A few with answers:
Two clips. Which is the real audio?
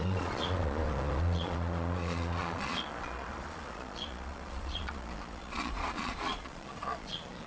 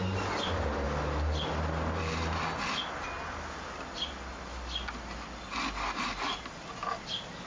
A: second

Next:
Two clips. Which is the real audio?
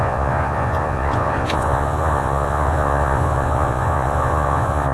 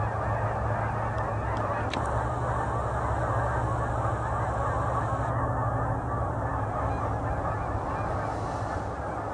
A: second